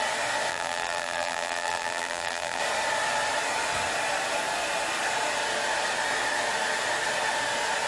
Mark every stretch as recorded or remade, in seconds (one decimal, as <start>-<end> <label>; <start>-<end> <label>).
0.0-0.5 recorded; 0.5-2.6 remade; 2.6-7.9 recorded